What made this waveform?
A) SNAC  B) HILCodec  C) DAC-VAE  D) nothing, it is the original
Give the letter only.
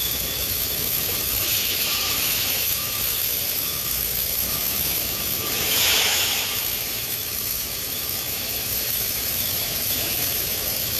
C